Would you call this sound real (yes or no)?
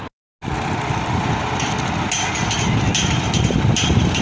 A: yes